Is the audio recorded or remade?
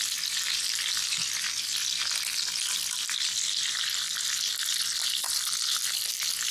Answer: recorded